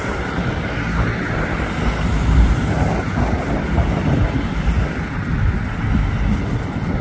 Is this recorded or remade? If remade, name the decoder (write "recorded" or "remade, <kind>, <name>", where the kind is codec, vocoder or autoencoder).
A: recorded